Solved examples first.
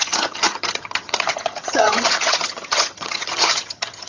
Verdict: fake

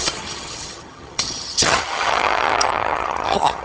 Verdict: fake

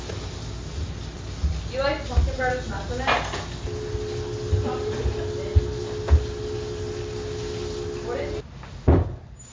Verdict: real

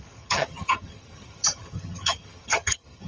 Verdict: fake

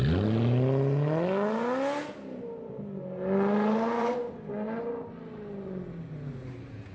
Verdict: real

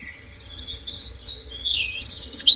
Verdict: fake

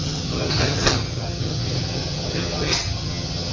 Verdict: fake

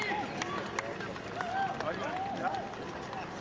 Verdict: real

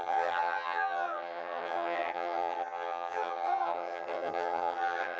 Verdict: fake